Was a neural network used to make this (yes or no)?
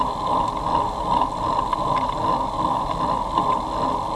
no